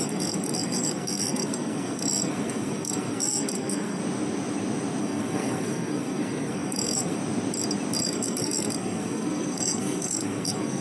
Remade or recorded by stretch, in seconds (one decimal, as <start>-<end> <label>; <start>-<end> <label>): 0.0-4.0 remade; 4.0-5.0 recorded; 5.0-7.2 remade; 7.2-8.0 recorded; 8.0-10.8 remade